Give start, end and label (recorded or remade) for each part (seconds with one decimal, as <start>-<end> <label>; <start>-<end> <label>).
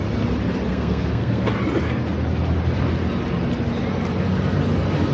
0.0-0.7 recorded; 0.7-1.5 remade; 1.5-5.1 recorded